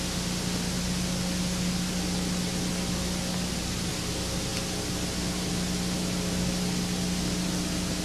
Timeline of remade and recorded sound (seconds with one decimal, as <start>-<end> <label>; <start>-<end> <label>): 0.0-8.0 recorded